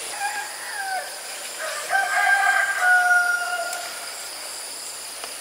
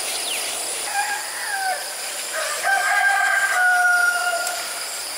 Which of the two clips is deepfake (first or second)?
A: second